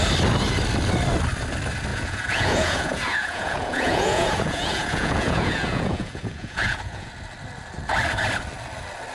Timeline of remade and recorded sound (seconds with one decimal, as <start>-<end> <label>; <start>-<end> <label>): 0.0-1.9 recorded; 1.9-7.1 remade; 7.1-9.1 recorded